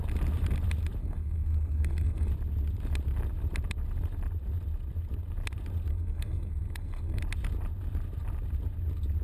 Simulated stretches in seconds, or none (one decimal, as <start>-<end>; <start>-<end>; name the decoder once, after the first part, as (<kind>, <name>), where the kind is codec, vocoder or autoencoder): 1.0-2.3 (codec, SNAC); 5.9-7.2